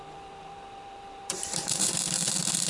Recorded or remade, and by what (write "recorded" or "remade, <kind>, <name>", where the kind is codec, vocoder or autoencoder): remade, vocoder, BigVGAN v2